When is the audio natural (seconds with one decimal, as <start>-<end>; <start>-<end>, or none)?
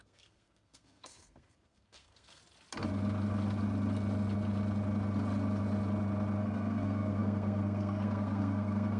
2.4-6.4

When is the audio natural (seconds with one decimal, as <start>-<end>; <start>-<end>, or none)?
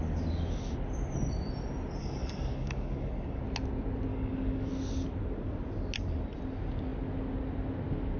0.0-2.0; 3.4-4.1; 4.7-8.2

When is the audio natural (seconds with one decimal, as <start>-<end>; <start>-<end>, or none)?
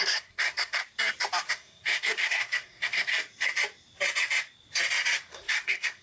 0.8-1.5; 3.1-5.3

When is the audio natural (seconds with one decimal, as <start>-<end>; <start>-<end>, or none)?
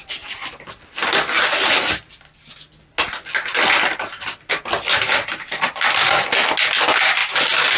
0.0-7.8